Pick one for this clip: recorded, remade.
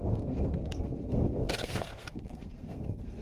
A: remade